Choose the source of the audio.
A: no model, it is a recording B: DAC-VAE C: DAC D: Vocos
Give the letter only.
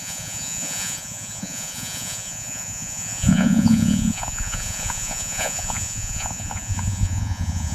D